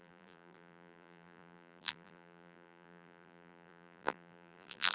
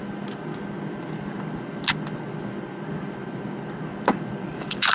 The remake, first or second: first